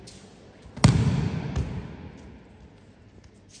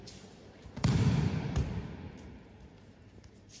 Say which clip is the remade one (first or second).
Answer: second